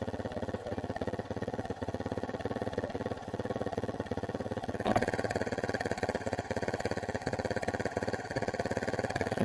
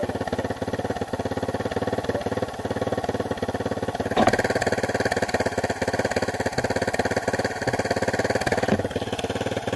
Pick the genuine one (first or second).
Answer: second